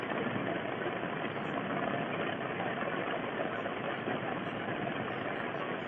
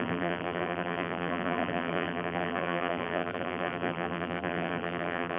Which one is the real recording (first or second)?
first